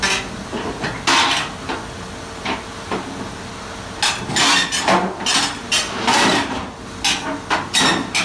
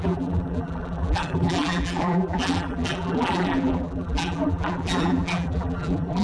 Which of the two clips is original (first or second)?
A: first